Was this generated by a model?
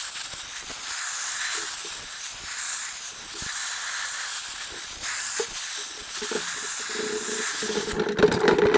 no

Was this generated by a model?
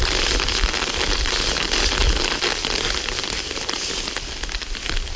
no